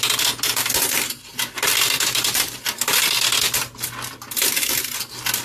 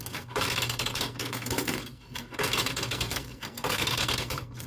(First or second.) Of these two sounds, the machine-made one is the second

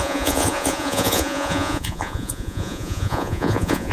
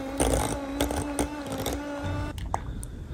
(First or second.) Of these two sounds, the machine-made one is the first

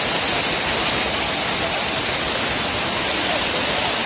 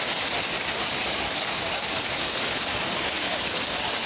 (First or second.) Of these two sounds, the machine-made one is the second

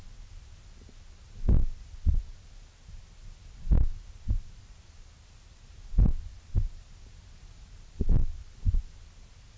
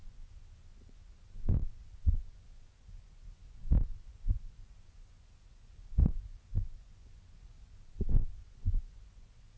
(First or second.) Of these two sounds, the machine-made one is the second